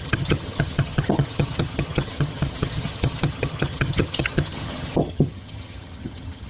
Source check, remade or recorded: remade